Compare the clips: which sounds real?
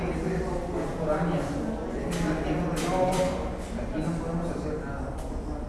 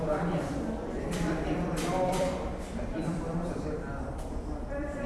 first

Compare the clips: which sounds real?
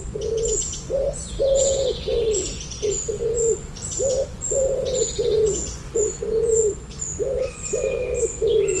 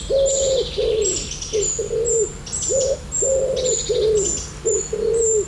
second